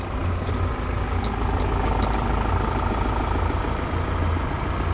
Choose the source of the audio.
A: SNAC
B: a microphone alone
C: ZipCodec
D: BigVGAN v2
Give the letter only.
B